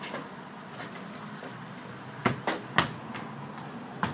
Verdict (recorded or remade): recorded